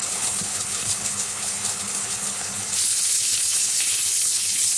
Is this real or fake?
fake